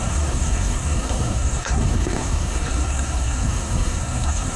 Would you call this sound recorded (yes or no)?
no